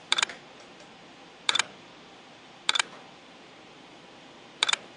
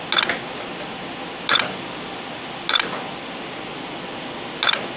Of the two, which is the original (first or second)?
second